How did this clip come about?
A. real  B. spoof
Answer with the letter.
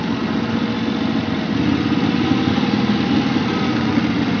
A